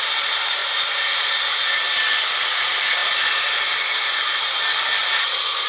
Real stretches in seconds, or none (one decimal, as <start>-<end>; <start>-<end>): 0.0-5.7